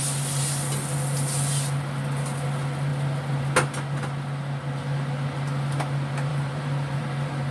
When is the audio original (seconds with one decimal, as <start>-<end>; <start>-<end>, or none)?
0.0-6.3